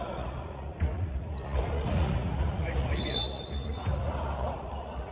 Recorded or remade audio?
remade